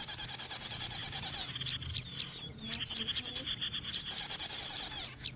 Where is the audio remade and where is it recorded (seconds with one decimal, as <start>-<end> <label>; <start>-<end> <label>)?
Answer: 0.0-5.4 recorded